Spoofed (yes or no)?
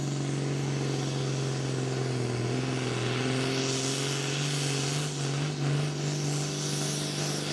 no